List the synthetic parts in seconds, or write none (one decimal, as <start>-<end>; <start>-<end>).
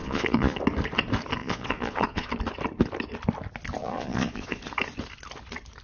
0.0-0.6; 1.4-2.3; 3.8-4.6